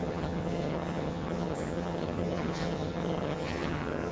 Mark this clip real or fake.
fake